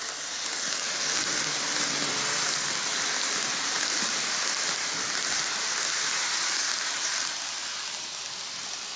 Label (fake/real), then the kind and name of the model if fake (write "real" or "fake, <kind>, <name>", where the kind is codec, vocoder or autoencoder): real